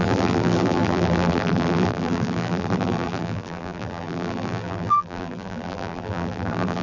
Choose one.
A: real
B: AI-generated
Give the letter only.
B